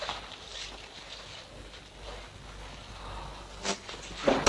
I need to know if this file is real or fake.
real